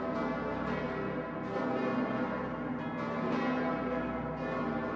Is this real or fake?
real